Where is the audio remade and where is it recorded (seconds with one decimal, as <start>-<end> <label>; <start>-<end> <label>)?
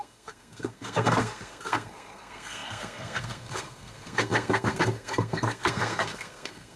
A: 0.0-6.8 remade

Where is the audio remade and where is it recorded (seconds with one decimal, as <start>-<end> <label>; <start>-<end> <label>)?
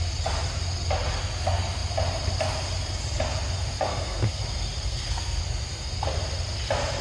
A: 0.0-3.9 recorded; 3.9-4.4 remade; 4.4-4.9 recorded; 4.9-5.4 remade; 5.4-7.0 recorded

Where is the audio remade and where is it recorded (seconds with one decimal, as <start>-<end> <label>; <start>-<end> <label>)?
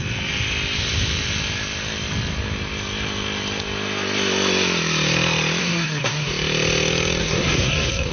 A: 0.0-5.6 recorded; 5.6-6.3 remade; 6.3-7.2 recorded; 7.2-8.1 remade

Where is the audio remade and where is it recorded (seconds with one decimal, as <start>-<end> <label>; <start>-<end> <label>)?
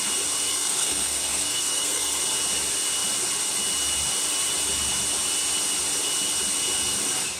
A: 0.0-0.5 recorded; 0.5-2.2 remade; 2.2-7.4 recorded